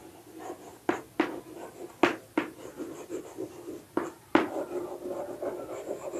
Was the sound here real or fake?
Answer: real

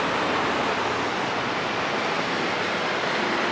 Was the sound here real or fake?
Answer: real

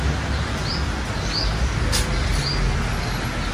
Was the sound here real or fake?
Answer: real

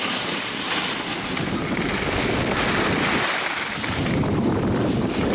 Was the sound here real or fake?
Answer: real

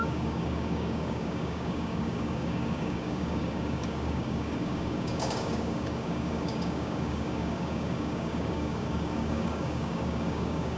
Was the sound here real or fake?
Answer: fake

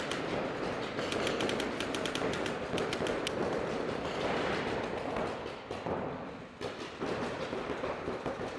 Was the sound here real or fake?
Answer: real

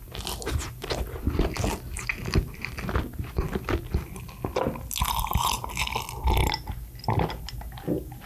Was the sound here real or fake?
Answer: real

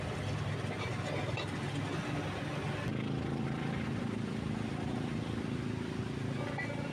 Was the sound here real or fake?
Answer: real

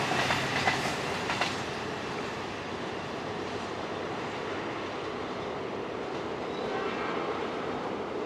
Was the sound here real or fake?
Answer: fake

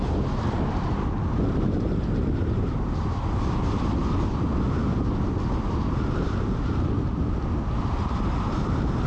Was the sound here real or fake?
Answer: real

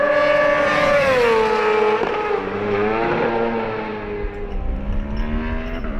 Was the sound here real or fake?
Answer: real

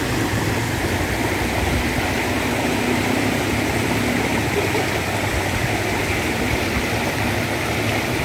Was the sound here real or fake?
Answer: real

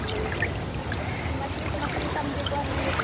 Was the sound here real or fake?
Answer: real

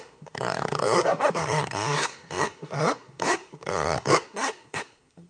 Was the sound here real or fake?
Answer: fake